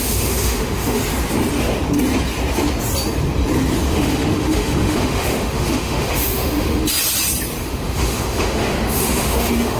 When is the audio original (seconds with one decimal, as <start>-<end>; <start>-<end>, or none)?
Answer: 1.0-3.9; 6.8-7.6